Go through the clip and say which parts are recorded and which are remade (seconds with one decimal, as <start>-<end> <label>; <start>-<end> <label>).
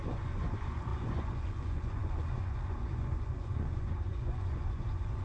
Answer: 0.0-5.2 remade